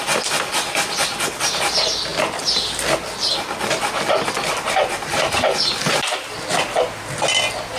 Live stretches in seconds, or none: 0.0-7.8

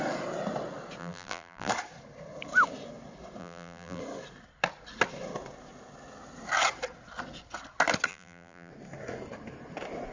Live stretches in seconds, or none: 0.0-1.0; 1.7-3.4; 4.0-8.1; 8.7-10.1

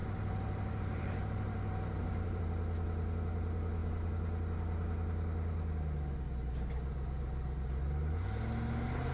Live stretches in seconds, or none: 2.4-9.1

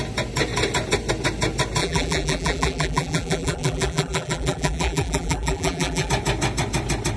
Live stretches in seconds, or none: 0.0-1.8; 6.1-7.2

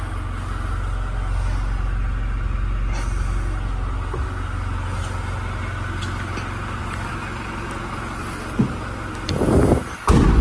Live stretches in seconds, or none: 0.0-6.8; 9.8-10.4

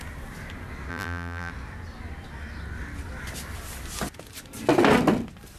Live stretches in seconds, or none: 0.0-0.9; 1.5-5.6

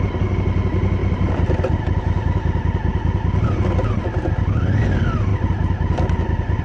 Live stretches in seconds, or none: 0.0-1.0; 1.8-5.3